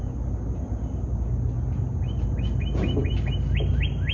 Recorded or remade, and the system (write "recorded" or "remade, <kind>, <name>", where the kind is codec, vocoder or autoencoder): recorded